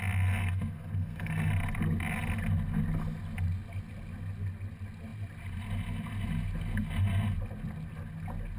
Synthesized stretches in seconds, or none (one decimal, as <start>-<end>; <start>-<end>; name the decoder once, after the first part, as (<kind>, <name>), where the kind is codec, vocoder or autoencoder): 0.4-1.5 (codec, SNAC)